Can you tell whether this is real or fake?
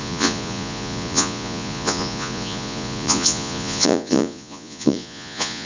fake